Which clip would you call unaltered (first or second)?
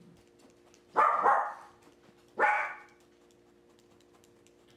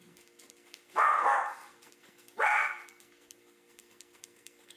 first